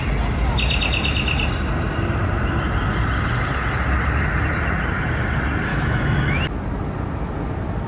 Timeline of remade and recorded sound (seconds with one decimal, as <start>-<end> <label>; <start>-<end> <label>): 0.0-5.7 recorded; 5.7-6.4 remade; 6.4-7.9 recorded